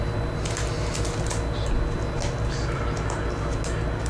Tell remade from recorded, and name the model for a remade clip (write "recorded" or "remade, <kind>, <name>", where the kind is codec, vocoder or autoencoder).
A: recorded